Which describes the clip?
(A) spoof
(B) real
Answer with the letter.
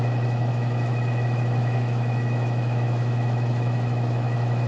A